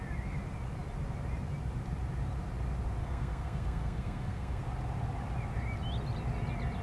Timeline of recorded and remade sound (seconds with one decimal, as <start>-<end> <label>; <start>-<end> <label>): 0.0-3.0 recorded; 3.0-4.6 remade; 4.6-6.8 recorded